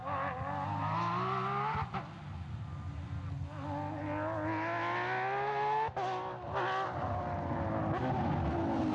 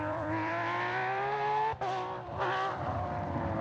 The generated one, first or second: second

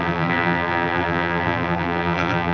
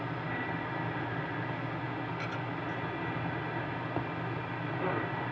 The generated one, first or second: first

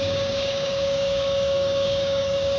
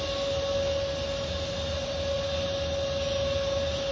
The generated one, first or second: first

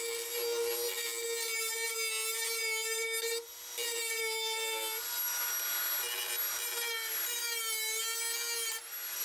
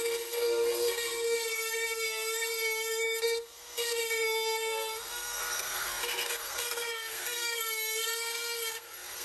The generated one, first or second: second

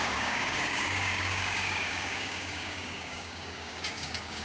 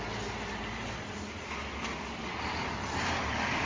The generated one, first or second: first